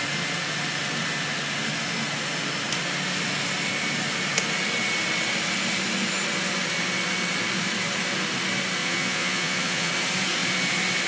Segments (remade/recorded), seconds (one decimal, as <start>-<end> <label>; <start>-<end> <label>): 0.0-8.8 recorded; 8.8-9.9 remade; 9.9-11.1 recorded